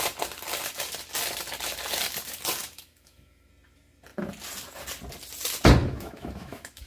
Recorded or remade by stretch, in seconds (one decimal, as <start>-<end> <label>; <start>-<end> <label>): 0.0-2.6 recorded; 2.6-3.5 remade; 3.5-5.8 recorded; 5.8-6.9 remade